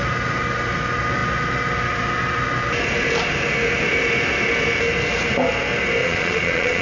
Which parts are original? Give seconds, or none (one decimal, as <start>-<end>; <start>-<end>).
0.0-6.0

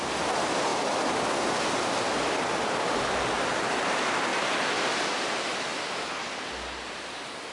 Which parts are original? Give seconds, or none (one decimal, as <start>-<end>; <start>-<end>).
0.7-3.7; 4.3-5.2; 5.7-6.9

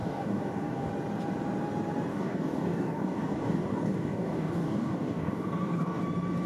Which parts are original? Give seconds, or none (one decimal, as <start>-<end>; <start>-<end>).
0.9-2.1; 6.0-6.5

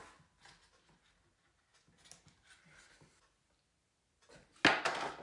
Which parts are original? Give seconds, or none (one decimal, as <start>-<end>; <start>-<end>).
0.0-5.2